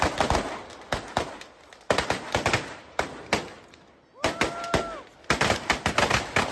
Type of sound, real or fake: real